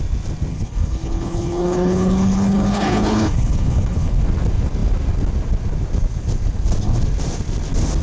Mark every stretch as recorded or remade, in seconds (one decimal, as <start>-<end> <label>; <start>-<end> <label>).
0.0-0.5 recorded; 0.5-4.2 remade; 4.2-8.0 recorded